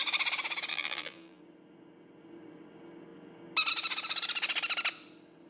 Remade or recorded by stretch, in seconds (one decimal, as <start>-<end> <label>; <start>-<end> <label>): 0.0-0.7 recorded; 0.7-1.4 remade; 1.4-5.5 recorded